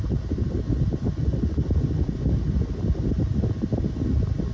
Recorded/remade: recorded